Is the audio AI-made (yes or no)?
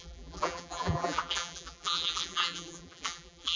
yes